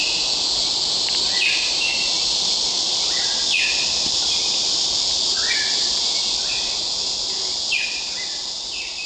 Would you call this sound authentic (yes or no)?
yes